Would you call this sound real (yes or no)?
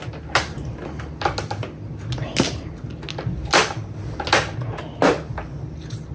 yes